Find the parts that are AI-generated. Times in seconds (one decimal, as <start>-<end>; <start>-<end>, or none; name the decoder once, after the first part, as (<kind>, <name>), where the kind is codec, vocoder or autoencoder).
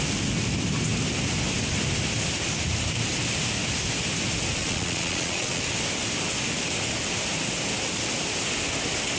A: 4.6-5.6 (vocoder, Vocos)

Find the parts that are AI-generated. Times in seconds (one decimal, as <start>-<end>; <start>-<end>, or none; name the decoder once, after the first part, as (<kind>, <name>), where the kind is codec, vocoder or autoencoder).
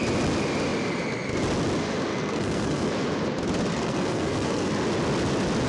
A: 2.1-2.9 (codec, SNAC); 3.7-4.7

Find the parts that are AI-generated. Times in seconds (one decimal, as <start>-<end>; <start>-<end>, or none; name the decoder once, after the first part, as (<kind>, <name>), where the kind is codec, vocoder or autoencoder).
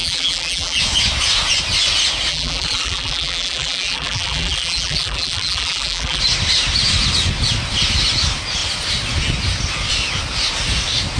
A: 0.0-0.8 (vocoder, BigVGAN v2); 2.3-6.2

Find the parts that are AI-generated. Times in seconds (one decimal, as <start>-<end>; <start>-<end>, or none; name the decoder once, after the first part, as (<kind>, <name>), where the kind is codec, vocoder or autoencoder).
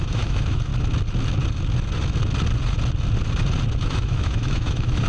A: 0.0-0.7 (autoencoder, DAC-VAE); 3.8-5.1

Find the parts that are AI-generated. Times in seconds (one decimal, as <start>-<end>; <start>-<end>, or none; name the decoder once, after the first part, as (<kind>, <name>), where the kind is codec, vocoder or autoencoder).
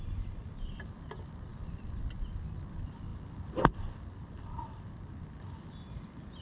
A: none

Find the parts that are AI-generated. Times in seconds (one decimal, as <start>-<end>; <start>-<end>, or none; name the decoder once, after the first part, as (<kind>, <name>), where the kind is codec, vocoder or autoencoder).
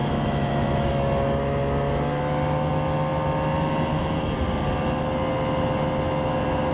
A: 0.0-0.9 (autoencoder, DAC-VAE)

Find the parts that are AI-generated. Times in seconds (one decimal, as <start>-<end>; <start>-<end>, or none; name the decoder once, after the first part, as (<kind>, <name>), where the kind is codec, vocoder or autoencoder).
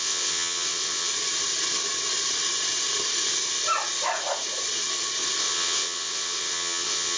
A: 0.0-1.1 (vocoder, WaveNeXt); 5.4-7.2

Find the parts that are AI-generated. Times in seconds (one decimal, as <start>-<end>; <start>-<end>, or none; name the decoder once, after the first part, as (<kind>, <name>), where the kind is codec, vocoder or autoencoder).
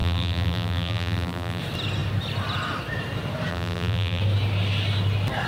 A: 0.0-1.6 (vocoder, BigVGAN v2); 3.5-4.2